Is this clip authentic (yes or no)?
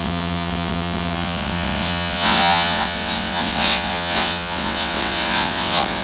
no